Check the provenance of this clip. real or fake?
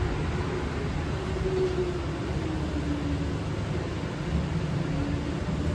real